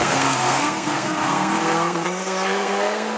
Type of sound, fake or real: fake